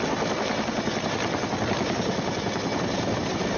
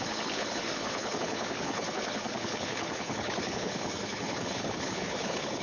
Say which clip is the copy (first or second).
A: second